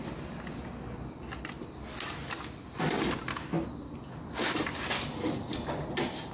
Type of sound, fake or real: real